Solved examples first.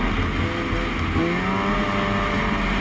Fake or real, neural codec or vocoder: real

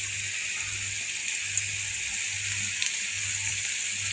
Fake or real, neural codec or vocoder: real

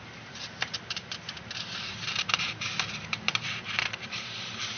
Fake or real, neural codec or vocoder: fake, vocoder, BigVGAN v2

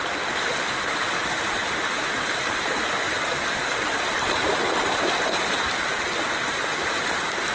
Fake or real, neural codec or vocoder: real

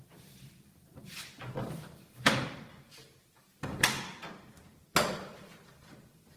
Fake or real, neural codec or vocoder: fake, vocoder, BigVGAN v2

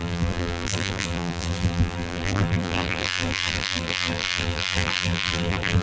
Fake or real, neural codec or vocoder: fake, vocoder, BigVGAN v2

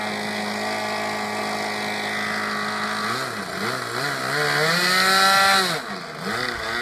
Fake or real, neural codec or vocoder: real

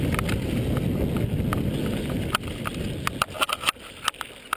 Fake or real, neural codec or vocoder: real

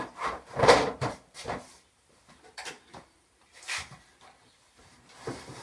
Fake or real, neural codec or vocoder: fake, vocoder, BigVGAN v2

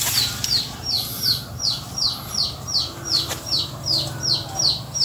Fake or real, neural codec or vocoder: fake, vocoder, BigVGAN v2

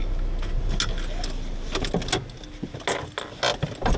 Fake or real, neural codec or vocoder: real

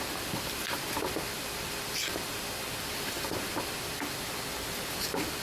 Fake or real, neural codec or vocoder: fake, vocoder, BigVGAN v2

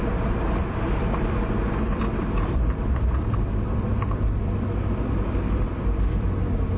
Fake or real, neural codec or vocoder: fake, vocoder, BigVGAN v2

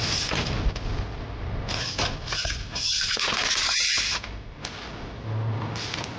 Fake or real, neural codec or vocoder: real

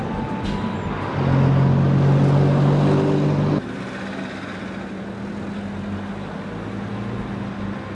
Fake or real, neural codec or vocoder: real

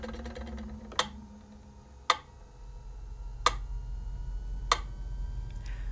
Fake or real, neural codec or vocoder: real